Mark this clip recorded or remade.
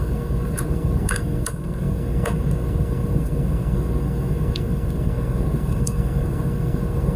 remade